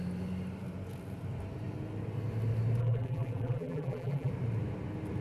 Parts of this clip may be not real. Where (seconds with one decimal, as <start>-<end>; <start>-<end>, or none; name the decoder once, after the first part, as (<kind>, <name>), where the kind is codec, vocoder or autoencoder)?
2.8-4.3 (vocoder, BigVGAN v2)